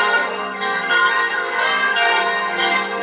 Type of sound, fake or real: fake